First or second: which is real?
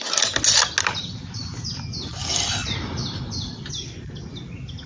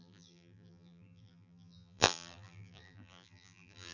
first